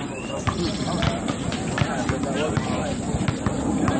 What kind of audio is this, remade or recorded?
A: recorded